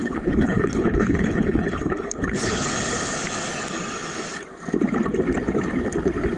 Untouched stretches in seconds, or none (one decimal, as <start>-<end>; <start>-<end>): 2.7-6.4